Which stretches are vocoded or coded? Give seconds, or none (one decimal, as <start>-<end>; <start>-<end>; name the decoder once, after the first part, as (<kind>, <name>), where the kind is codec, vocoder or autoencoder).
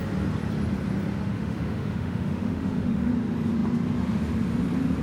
1.3-3.1 (autoencoder, DAC-VAE)